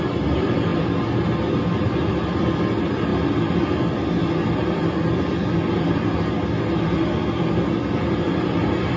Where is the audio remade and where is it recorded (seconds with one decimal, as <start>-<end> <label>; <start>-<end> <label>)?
0.0-9.0 recorded